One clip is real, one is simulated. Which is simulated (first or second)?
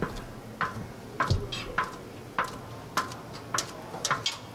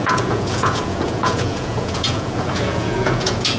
second